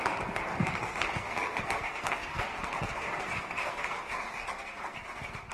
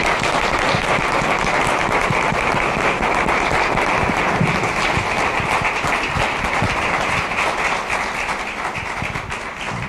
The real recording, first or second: second